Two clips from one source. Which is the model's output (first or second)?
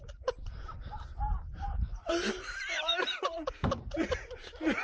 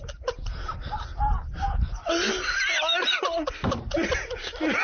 first